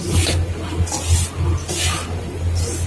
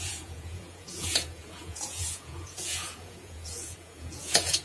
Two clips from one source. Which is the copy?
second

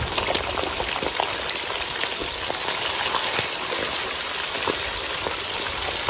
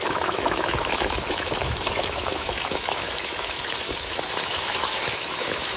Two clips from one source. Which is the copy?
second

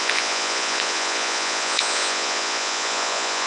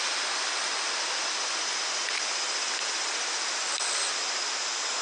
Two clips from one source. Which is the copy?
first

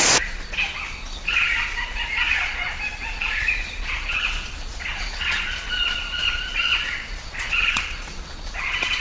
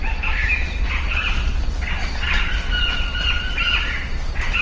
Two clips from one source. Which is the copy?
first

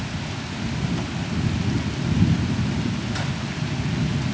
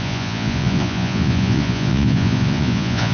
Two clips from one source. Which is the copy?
second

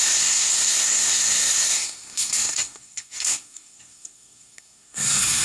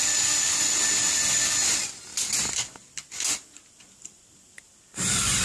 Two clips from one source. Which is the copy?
first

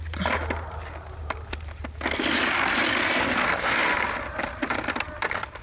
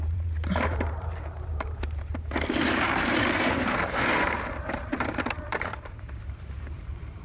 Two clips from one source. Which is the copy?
second